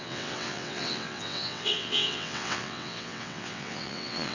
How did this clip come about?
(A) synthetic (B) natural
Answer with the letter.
A